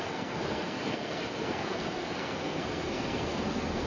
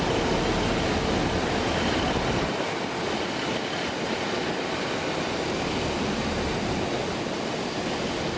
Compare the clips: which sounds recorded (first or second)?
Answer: second